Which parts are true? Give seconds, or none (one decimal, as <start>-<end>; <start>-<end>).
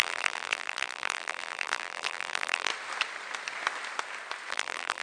2.7-4.5